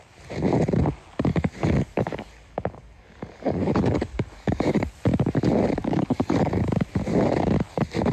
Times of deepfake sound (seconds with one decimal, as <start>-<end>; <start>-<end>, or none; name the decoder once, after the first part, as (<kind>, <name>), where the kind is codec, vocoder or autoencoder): 1.3-4.9 (codec, DAC); 5.8-6.6